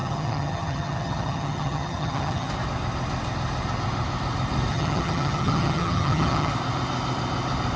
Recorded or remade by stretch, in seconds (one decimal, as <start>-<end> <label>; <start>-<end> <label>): 0.0-2.5 remade; 2.5-4.7 recorded; 4.7-6.5 remade; 6.5-7.8 recorded